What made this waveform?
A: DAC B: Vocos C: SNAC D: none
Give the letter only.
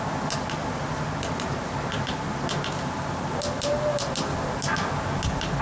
D